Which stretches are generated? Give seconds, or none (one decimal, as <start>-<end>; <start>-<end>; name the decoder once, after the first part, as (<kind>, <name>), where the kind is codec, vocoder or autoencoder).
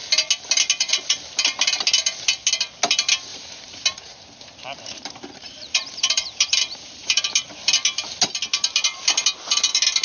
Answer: 3.3-7.2 (vocoder, BigVGAN v2)